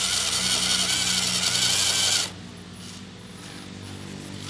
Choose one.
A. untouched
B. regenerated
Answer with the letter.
A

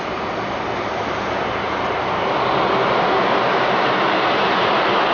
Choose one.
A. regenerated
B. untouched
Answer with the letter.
B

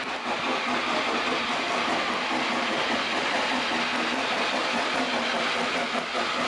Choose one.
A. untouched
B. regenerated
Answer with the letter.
B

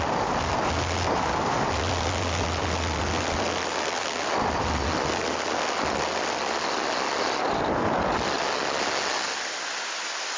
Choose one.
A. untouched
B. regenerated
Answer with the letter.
A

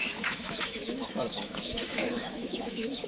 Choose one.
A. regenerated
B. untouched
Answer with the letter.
A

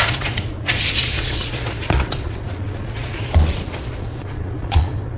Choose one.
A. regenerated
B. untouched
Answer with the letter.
A